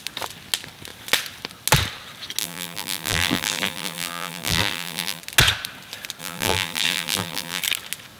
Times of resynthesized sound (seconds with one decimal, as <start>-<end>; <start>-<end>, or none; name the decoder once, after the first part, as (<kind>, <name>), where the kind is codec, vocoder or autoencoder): 2.4-5.2 (vocoder, BigVGAN v2); 6.2-7.6